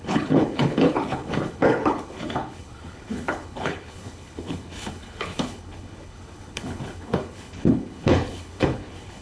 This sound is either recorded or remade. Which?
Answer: remade